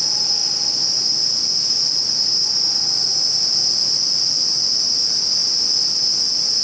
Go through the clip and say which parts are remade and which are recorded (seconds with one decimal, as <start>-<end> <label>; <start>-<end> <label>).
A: 0.0-6.6 recorded